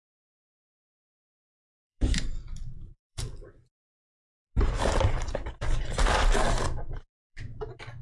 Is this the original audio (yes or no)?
no